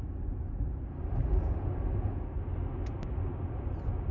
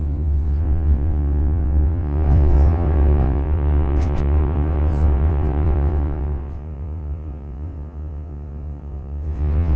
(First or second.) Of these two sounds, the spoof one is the second